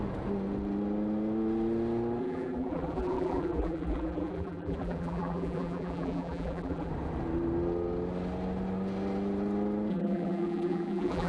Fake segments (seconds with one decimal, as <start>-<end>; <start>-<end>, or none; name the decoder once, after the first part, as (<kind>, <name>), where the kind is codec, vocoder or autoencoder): 2.2-6.9 (vocoder, BigVGAN v2); 9.9-11.3